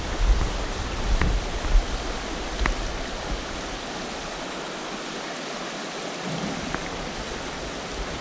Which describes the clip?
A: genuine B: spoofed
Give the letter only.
A